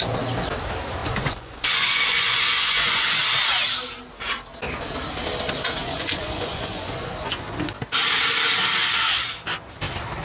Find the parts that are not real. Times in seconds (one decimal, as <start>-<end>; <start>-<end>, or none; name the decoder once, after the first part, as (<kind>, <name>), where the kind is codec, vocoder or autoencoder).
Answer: 1.0-3.2 (vocoder, Vocos); 5.8-7.7